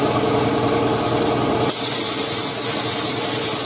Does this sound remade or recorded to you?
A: recorded